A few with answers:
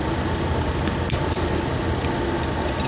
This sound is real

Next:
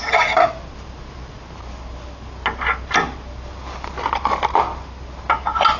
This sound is real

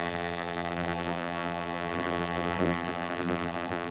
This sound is fake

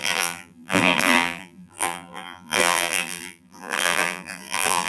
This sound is fake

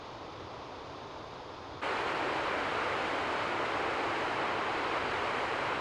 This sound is fake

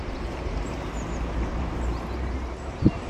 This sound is fake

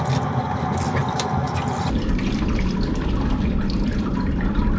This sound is fake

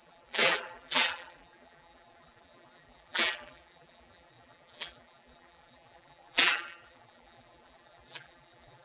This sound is fake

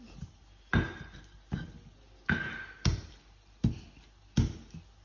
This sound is real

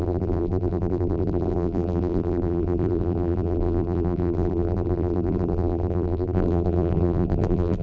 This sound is fake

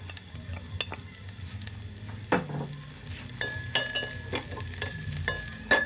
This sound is real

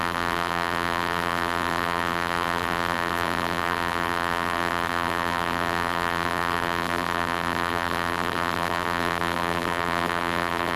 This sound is fake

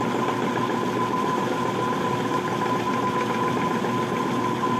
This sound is real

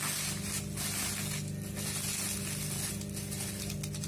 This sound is real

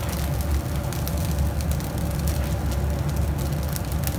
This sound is real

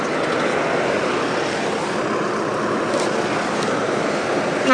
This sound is real